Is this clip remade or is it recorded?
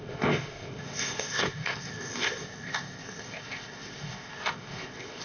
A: remade